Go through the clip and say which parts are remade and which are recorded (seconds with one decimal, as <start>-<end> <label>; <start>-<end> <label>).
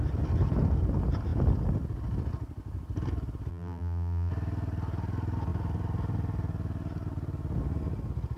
0.0-3.5 recorded; 3.5-4.3 remade; 4.3-8.4 recorded